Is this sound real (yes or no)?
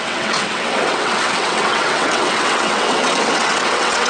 no